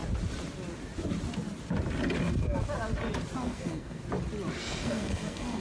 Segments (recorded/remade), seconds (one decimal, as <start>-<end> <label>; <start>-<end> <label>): 0.0-3.4 recorded; 3.4-4.0 remade; 4.0-4.6 recorded; 4.6-5.6 remade